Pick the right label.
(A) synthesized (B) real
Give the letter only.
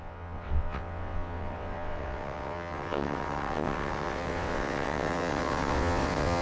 A